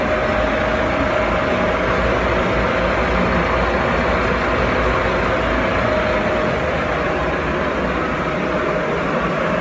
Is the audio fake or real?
real